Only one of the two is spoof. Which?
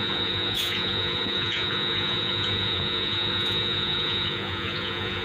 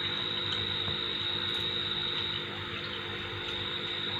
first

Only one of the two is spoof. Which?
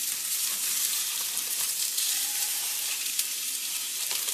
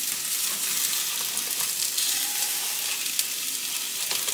first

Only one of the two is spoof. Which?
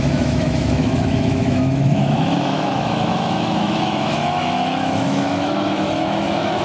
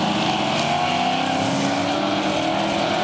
first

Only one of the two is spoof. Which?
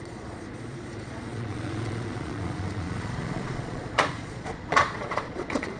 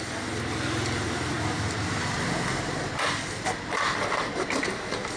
first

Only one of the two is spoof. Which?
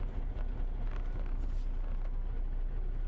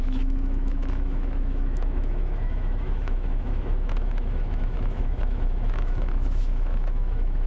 second